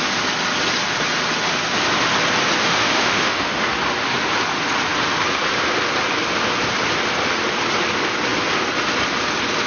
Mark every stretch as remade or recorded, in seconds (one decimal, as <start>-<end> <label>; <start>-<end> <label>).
0.0-2.6 recorded; 2.6-3.7 remade; 3.7-9.7 recorded